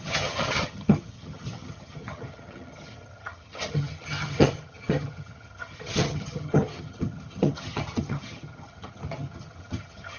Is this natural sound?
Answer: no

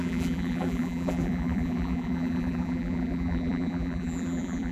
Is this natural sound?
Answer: no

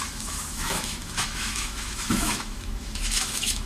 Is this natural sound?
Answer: no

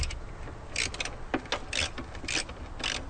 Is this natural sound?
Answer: yes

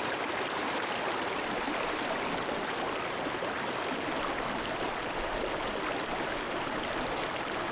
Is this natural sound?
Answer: yes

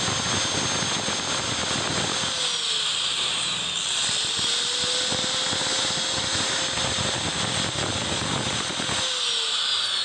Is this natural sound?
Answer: yes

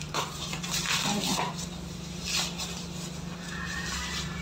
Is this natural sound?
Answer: yes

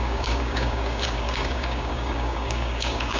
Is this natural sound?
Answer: no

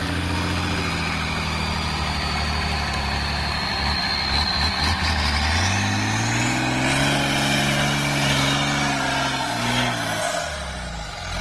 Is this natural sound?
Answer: yes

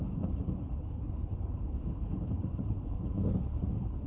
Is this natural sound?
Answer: no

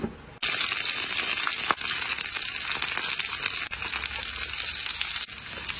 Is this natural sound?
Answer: yes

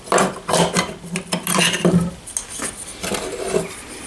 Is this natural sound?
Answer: yes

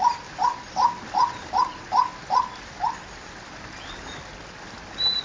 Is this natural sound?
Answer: yes